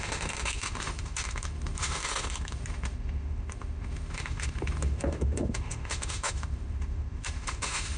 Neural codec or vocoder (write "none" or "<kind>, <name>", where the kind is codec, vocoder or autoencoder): autoencoder, DAC-VAE